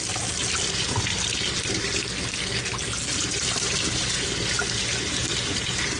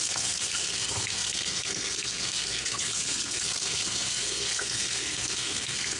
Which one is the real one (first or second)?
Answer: first